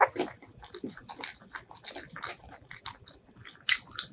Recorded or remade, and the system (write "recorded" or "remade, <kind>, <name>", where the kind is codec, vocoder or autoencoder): recorded